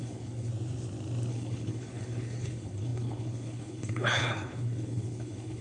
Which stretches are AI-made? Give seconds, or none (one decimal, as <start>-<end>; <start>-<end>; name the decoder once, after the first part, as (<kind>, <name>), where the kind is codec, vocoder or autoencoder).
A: 0.0-0.5 (codec, HILCodec); 1.3-5.6